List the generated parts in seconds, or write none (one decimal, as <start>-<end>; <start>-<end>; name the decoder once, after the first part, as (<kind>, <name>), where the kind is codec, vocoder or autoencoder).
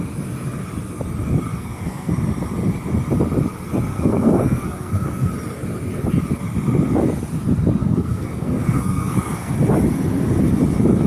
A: 1.5-2.1 (codec, SNAC); 3.9-5.3; 7.8-9.5